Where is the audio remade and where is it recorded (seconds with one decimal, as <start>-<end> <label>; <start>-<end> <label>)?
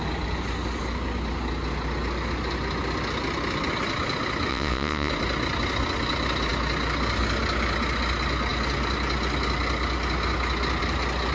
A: 0.0-4.5 recorded; 4.5-5.1 remade; 5.1-11.3 recorded